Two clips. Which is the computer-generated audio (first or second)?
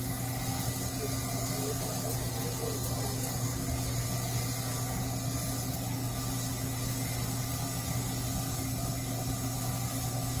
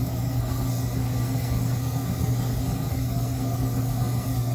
second